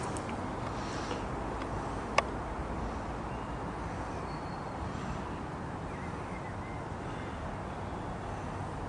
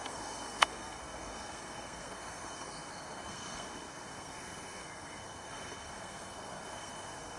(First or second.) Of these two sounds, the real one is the first